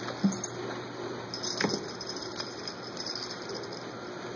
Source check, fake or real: real